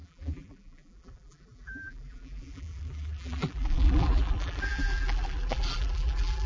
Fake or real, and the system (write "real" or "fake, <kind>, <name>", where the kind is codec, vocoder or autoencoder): fake, vocoder, BigVGAN v2